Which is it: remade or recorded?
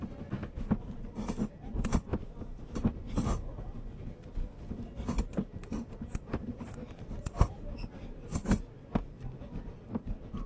recorded